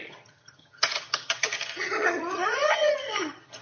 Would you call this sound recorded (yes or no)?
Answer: no